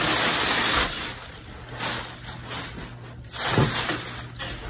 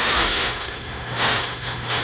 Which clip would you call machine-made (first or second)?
second